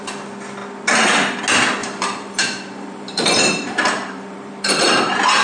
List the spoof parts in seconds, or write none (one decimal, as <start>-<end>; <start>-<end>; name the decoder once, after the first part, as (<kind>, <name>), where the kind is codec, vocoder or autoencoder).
1.8-5.0 (vocoder, BigVGAN v2)